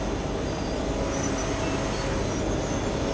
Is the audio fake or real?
real